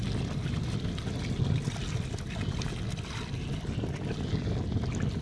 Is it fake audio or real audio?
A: real